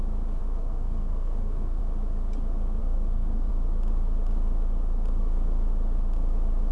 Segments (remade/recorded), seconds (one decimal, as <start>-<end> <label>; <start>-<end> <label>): 0.0-0.4 recorded; 0.4-1.8 remade; 1.8-2.8 recorded; 2.8-3.5 remade; 3.5-6.7 recorded

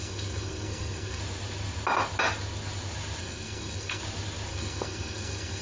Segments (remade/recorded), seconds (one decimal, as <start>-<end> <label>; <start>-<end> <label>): 0.0-1.2 remade; 1.2-3.2 recorded; 3.2-4.0 remade; 4.0-4.5 recorded; 4.5-5.6 remade

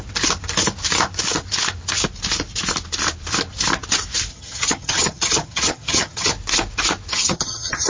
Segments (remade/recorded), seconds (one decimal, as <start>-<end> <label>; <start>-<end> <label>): 0.0-4.3 recorded; 4.3-6.3 remade; 6.3-7.1 recorded; 7.1-7.9 remade

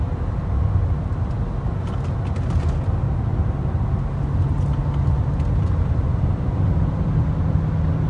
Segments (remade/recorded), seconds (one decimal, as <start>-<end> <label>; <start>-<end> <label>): 0.0-8.1 recorded

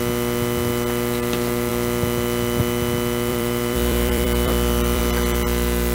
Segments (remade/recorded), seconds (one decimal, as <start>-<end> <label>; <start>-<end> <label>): 0.0-3.3 recorded; 3.3-5.0 remade; 5.0-5.9 recorded

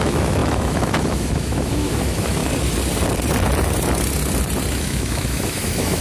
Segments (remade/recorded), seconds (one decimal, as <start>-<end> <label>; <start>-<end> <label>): 0.0-2.4 remade; 2.4-4.7 recorded; 4.7-6.0 remade

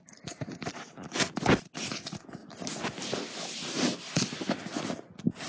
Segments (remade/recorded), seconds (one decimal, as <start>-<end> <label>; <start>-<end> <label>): 0.0-5.5 recorded